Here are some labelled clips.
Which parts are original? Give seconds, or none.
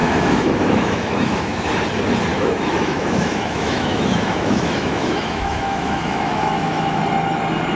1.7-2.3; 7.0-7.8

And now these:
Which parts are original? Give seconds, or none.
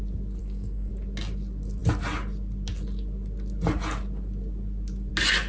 0.0-0.4; 0.9-5.5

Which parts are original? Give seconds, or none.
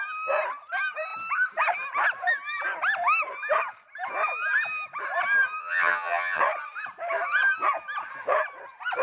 0.0-5.6; 6.4-9.0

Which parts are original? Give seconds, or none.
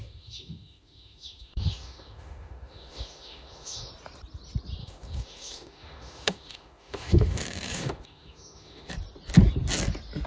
3.9-4.8; 8.9-10.3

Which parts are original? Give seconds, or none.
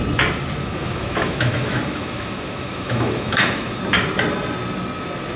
0.0-0.6; 3.8-5.4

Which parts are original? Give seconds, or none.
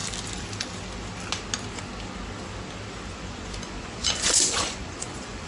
0.0-3.1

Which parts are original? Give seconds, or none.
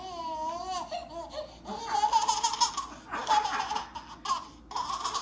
0.0-5.2